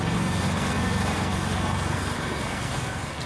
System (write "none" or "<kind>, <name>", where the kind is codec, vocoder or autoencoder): codec, SNAC